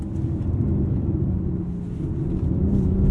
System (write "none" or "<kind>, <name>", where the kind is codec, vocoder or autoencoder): none